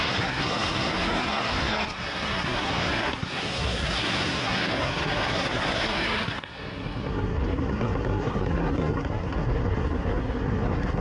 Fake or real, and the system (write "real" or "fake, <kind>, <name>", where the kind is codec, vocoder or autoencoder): fake, codec, SNAC